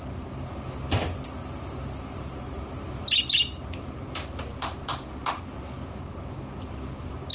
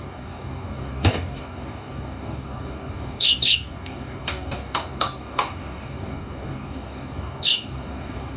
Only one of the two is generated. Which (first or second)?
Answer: second